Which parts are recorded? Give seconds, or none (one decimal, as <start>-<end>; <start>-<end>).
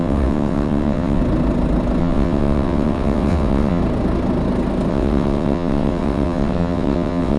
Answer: 1.2-2.0; 3.8-4.9